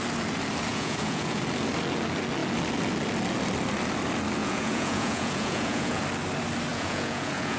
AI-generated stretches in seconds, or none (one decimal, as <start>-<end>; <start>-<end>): 0.7-1.4; 4.4-6.0; 6.7-7.6